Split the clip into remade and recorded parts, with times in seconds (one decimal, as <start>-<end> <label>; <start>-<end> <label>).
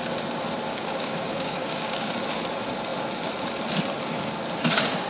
0.0-0.7 recorded; 0.7-2.1 remade; 2.1-5.1 recorded